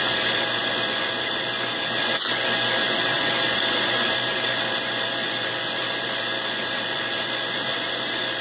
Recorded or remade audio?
remade